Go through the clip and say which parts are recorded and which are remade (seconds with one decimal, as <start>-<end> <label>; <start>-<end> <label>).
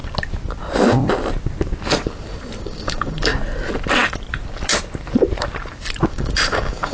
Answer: 0.0-2.6 recorded; 2.6-3.3 remade; 3.3-6.1 recorded; 6.1-6.9 remade